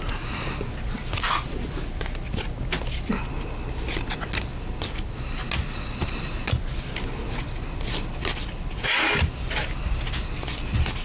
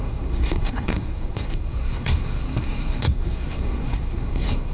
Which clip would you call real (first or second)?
first